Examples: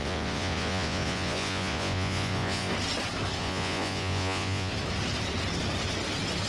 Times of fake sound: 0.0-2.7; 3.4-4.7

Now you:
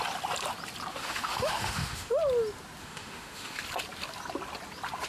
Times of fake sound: 0.9-2.2; 2.8-3.6

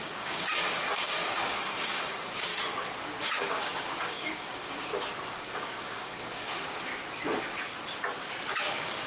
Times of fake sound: 0.0-2.5; 3.2-4.9; 5.4-6.9; 8.7-9.1

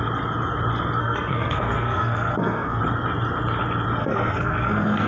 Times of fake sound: 1.0-2.8; 4.0-5.1

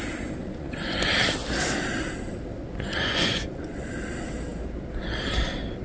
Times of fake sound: 0.4-1.1; 2.6-3.9

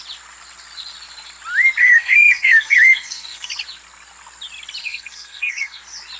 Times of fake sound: 1.8-3.5; 4.8-5.8

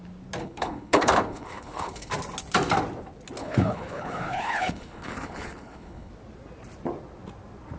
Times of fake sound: 0.4-2.1; 3.4-6.1

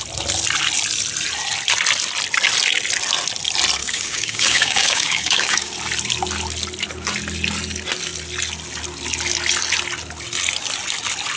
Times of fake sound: 3.8-5.7